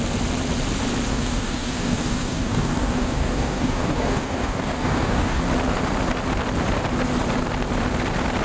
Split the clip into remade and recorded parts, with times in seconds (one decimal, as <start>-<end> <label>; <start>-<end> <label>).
0.0-1.1 recorded; 1.1-5.4 remade; 5.4-8.4 recorded